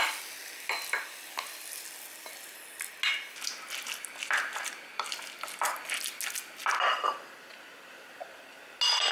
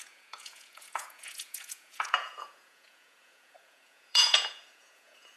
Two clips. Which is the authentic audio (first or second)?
first